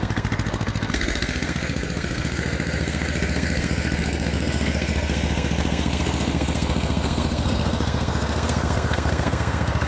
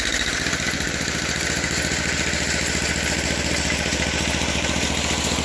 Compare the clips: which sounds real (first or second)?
second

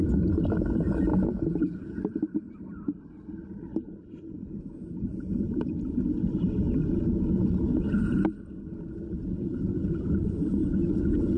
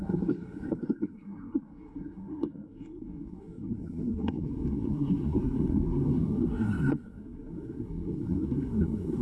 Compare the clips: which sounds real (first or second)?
first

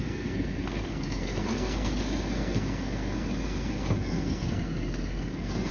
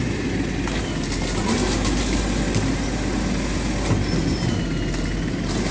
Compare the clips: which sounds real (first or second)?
second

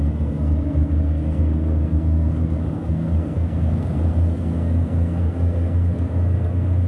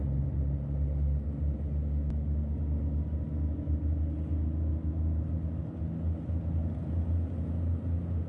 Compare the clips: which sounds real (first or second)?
second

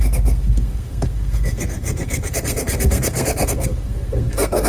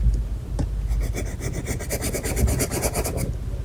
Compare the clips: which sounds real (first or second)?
second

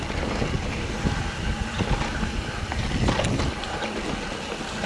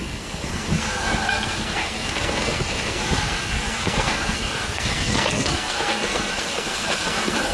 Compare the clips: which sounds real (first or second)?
first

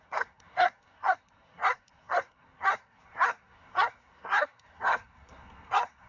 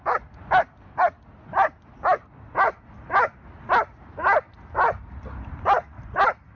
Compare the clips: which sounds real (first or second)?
second